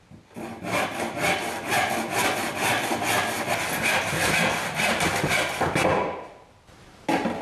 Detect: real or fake real